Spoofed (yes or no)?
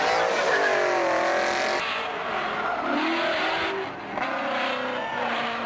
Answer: no